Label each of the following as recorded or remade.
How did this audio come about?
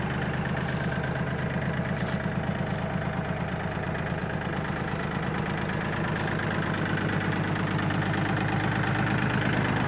recorded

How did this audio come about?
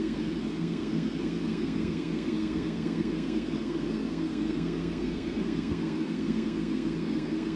remade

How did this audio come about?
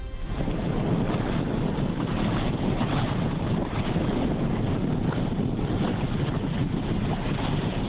recorded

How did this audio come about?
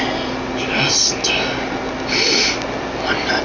recorded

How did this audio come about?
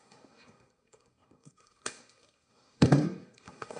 remade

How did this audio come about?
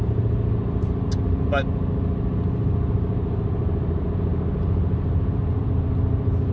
recorded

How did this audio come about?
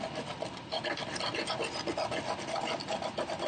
recorded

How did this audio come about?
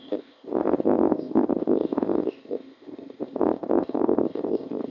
remade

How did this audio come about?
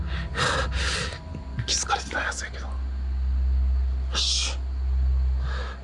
recorded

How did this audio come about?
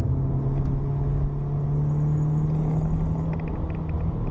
recorded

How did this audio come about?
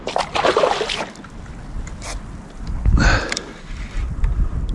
recorded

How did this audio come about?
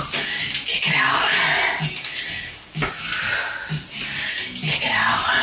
recorded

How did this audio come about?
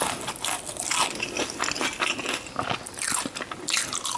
recorded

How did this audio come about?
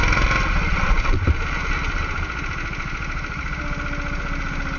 recorded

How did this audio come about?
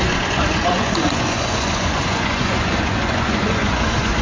remade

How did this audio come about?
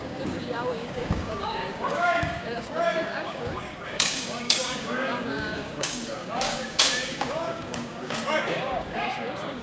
remade